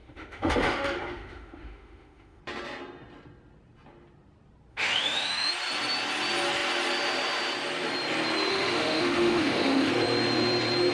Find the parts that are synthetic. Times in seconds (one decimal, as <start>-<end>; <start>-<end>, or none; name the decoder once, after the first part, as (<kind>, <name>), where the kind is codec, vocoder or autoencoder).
0.0-2.4 (autoencoder, DAC-VAE); 4.7-5.5; 8.5-9.9